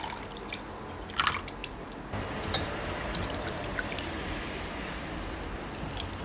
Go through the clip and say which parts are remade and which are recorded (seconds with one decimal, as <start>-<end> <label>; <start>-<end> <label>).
0.0-1.6 recorded; 1.6-5.3 remade; 5.3-6.2 recorded